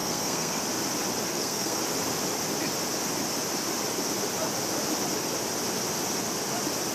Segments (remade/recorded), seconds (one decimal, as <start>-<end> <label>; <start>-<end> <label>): 0.0-0.6 remade; 0.6-1.3 recorded; 1.3-1.8 remade; 1.8-6.9 recorded